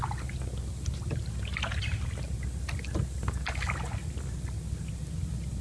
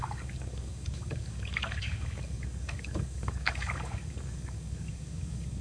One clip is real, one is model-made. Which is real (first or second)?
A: first